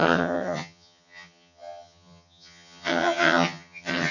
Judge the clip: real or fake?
fake